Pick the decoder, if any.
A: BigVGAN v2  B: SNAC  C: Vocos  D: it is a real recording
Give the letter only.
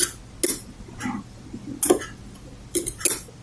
D